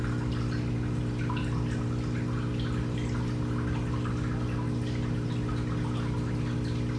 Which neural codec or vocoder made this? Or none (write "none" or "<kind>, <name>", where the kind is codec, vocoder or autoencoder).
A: none